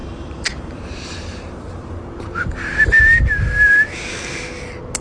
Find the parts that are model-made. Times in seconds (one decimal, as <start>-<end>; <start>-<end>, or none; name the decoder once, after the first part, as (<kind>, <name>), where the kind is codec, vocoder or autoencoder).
0.0-3.0 (vocoder, BigVGAN v2)